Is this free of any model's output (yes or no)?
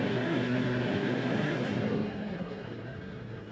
no